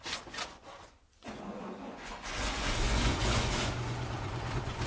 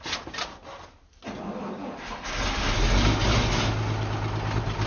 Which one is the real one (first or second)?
second